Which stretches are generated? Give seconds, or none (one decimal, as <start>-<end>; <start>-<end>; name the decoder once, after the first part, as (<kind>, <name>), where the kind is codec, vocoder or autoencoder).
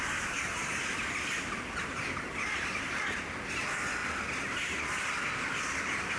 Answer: 2.0-3.2 (vocoder, BigVGAN v2)